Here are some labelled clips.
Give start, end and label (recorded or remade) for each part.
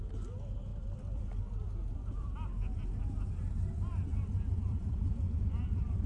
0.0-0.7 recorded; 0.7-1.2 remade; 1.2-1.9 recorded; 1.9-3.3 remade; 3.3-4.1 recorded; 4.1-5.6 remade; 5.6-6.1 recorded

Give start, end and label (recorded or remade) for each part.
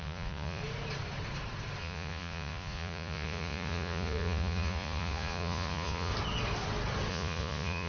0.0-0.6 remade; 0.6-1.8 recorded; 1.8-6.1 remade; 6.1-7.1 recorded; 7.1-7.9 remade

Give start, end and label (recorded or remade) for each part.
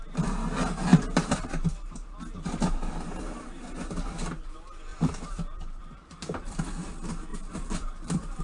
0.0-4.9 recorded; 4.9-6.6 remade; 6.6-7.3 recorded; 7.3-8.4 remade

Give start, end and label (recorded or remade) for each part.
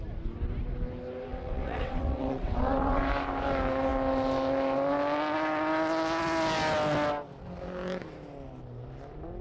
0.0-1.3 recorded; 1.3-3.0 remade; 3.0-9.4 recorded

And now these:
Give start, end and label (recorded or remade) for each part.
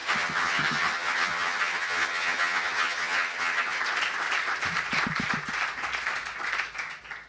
0.0-3.8 remade; 3.8-7.3 recorded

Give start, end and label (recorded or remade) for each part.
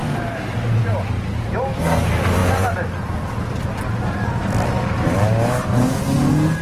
0.0-6.6 recorded